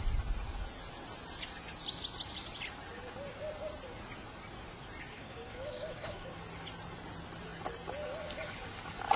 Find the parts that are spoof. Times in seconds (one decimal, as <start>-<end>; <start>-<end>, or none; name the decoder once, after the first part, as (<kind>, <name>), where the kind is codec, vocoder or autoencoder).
5.1-6.4 (codec, DAC)